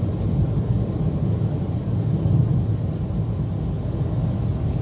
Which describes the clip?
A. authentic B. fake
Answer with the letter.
A